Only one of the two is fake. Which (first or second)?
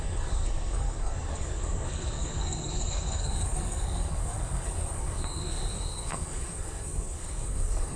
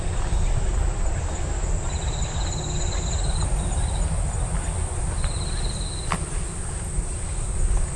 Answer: first